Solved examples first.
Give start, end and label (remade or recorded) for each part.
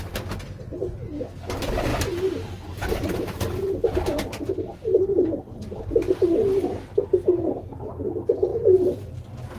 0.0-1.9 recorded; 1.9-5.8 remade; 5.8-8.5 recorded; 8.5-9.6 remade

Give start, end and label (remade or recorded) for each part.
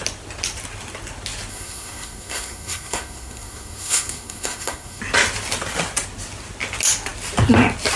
0.0-1.5 recorded; 1.5-5.0 remade; 5.0-8.0 recorded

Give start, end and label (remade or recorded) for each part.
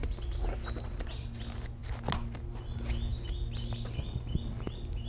0.0-5.1 recorded